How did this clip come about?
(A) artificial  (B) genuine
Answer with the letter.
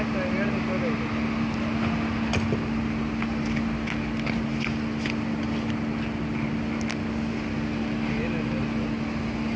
B